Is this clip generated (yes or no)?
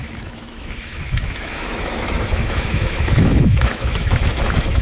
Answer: yes